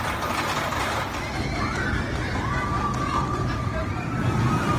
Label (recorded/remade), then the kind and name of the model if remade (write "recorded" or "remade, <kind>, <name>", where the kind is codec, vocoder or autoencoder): recorded